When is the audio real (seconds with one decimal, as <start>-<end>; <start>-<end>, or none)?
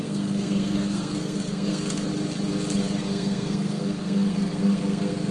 2.1-3.0